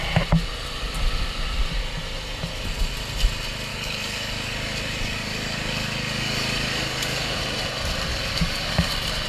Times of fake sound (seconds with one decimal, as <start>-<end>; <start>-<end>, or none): 3.7-7.4; 8.1-8.9